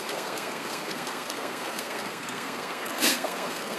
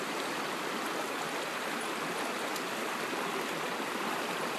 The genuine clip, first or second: second